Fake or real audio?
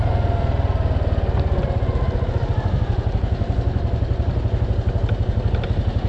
real